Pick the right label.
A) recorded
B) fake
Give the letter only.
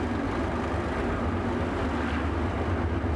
A